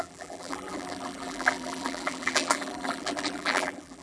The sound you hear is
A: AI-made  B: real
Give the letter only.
A